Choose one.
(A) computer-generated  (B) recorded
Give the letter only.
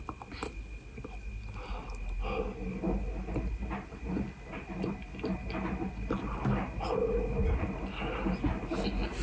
B